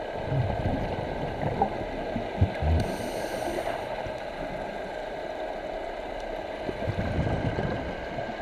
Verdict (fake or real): real